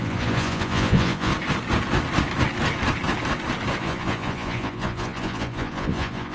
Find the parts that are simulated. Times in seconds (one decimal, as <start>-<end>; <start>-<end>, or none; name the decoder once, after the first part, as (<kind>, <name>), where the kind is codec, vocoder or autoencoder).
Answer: 0.0-1.3 (vocoder, Vocos); 3.8-6.3